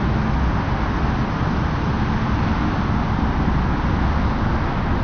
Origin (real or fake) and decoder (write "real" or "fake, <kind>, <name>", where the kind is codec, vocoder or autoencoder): real